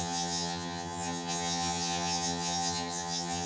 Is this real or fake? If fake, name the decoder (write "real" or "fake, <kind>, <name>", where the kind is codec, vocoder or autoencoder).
fake, vocoder, HiFi-GAN